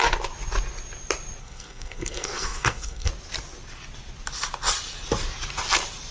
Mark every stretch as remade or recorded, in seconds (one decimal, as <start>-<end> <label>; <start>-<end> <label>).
0.0-1.4 recorded; 1.4-3.1 remade; 3.1-6.1 recorded